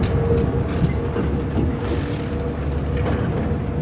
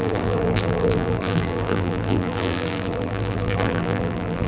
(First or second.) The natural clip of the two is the first